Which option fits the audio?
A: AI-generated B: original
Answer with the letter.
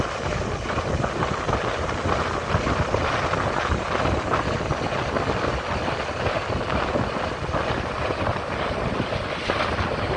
B